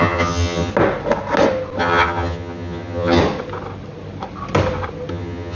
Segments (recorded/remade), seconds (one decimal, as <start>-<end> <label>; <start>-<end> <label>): 0.0-0.7 remade; 0.7-1.8 recorded; 1.8-3.2 remade; 3.2-5.1 recorded; 5.1-5.6 remade

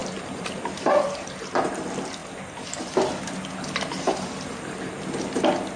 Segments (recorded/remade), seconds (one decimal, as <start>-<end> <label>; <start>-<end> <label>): 0.0-5.8 recorded

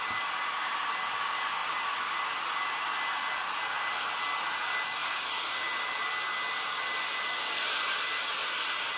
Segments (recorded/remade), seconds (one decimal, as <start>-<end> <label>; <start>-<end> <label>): 0.0-9.0 recorded